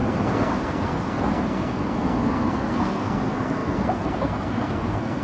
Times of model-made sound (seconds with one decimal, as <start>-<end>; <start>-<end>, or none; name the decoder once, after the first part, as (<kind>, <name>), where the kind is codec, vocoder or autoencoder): 0.0-5.2 (codec, SNAC)

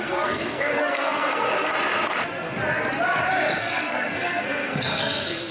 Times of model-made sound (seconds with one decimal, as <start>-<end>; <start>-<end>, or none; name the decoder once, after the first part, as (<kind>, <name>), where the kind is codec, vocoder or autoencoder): 0.0-1.7 (codec, SNAC); 3.6-5.5

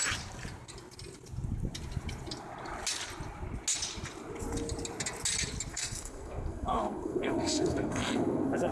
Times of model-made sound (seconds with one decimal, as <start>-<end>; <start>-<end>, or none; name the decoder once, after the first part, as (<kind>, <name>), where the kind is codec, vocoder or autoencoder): 5.7-8.7 (codec, SNAC)

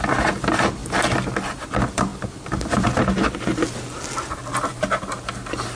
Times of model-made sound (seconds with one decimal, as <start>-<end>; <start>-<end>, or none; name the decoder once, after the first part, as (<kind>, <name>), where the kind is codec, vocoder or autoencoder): none

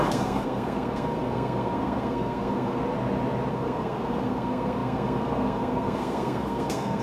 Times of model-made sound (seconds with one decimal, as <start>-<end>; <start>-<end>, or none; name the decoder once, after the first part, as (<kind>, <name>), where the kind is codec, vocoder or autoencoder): 0.0-2.8 (codec, SNAC); 3.5-7.0